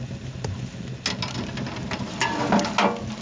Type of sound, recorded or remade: recorded